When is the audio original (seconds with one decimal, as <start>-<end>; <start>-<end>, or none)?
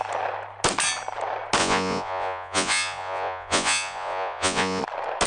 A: 0.0-1.6; 4.8-5.3